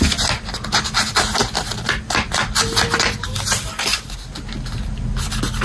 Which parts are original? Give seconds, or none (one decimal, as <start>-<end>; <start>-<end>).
0.0-5.6